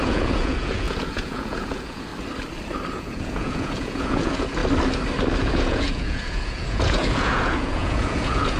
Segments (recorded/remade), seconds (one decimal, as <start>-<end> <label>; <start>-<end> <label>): 0.0-2.1 remade; 2.1-2.9 recorded; 2.9-4.6 remade; 4.6-5.4 recorded; 5.4-8.6 remade